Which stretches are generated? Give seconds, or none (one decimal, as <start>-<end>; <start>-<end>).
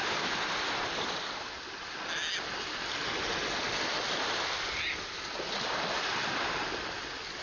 0.0-1.7